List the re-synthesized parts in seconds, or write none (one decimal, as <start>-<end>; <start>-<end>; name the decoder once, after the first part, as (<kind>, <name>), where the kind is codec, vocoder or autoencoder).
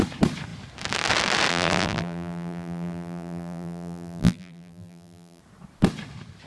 1.5-5.4 (vocoder, BigVGAN v2)